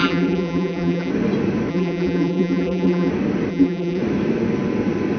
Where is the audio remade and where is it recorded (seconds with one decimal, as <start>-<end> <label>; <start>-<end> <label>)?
0.0-1.1 remade; 1.1-1.7 recorded; 1.7-3.1 remade; 3.1-3.5 recorded; 3.5-4.0 remade; 4.0-5.2 recorded